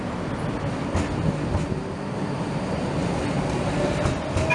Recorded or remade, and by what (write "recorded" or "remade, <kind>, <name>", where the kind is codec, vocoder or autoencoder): recorded